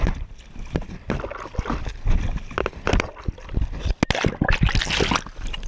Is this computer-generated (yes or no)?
no